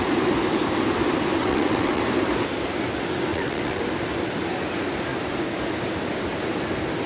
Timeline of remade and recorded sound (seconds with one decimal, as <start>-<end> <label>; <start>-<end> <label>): 0.0-1.4 recorded; 1.4-2.0 remade; 2.0-3.3 recorded; 3.3-3.8 remade; 3.8-7.1 recorded